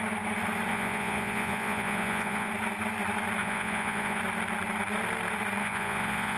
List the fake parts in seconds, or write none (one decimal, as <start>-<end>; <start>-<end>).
0.7-2.5; 3.4-4.2; 5.6-6.4